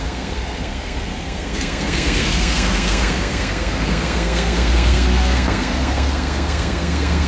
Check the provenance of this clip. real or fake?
fake